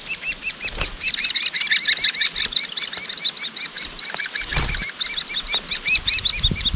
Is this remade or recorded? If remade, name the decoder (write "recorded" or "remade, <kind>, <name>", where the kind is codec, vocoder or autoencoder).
recorded